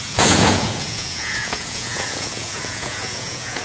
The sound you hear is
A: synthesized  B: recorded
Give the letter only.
A